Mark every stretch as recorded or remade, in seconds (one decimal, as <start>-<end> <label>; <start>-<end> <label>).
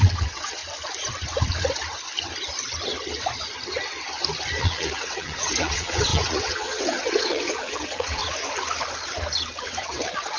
0.0-0.6 remade; 0.6-4.6 recorded; 4.6-8.2 remade; 8.2-9.6 recorded; 9.6-10.4 remade